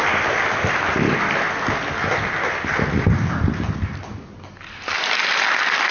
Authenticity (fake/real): real